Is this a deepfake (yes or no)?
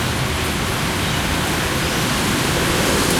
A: no